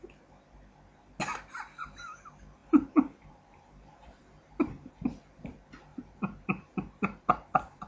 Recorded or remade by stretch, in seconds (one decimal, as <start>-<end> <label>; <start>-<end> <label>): 0.0-2.6 recorded; 2.6-4.9 remade; 4.9-5.9 recorded; 5.9-7.9 remade